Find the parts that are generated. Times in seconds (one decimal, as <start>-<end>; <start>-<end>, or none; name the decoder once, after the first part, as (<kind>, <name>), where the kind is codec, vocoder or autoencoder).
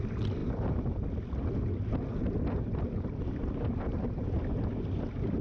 none